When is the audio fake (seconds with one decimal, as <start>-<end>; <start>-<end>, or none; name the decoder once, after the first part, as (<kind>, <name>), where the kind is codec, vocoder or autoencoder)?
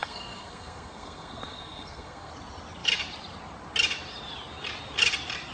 0.0-2.3 (codec, SNAC)